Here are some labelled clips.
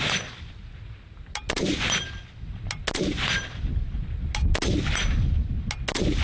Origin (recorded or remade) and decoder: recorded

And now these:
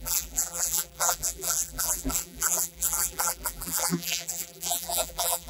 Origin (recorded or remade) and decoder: remade, vocoder, BigVGAN v2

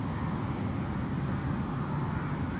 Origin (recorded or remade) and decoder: recorded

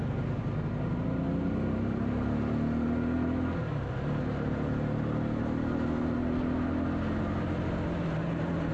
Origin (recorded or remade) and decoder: recorded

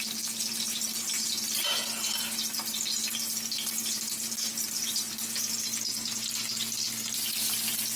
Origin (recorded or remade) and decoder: recorded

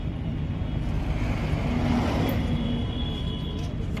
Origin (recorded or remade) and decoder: recorded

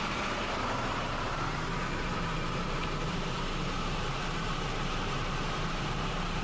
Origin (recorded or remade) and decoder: remade, vocoder, BigVGAN v2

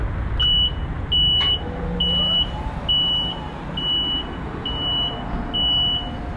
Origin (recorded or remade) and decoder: recorded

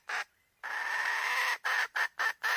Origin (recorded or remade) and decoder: recorded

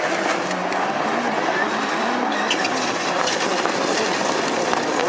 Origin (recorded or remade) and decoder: recorded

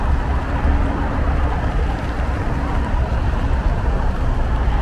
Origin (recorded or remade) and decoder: remade, vocoder, BigVGAN v2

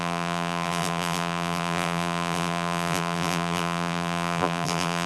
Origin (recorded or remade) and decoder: remade, vocoder, BigVGAN v2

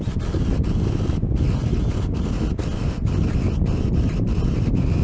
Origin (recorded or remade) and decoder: recorded